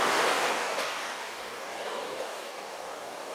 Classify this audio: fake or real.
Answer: fake